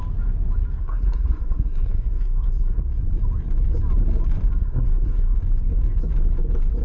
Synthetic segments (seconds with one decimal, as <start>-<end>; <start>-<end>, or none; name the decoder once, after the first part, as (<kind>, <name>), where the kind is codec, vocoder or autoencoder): 0.8-2.8 (codec, SNAC); 4.6-5.3